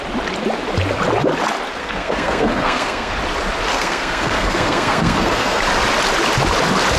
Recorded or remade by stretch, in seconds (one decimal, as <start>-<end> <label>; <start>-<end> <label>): 0.0-1.8 recorded; 1.8-3.1 remade; 3.1-3.7 recorded; 3.7-5.6 remade; 5.6-7.0 recorded